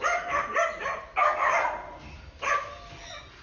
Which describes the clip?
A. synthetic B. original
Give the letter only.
B